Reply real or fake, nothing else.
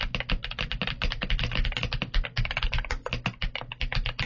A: real